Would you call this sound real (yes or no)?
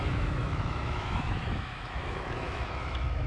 no